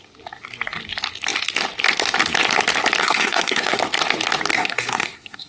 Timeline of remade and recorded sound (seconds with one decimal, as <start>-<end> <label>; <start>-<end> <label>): 0.0-3.0 recorded; 3.0-3.8 remade; 3.8-4.5 recorded; 4.5-5.5 remade